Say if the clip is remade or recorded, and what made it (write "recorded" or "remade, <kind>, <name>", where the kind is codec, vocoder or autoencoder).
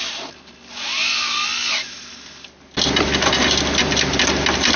recorded